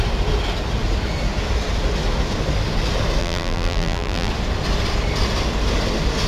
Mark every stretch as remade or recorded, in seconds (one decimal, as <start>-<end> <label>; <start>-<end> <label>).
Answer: 0.0-3.2 recorded; 3.2-4.3 remade; 4.3-6.3 recorded